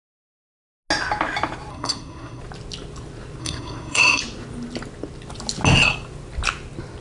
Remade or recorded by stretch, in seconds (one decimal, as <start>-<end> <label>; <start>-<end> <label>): 0.0-1.7 recorded; 1.7-2.4 remade; 2.4-3.4 recorded; 3.4-4.2 remade; 4.2-7.0 recorded